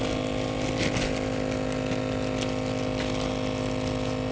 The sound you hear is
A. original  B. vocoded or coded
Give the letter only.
A